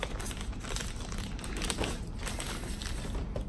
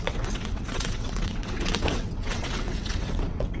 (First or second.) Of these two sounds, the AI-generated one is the second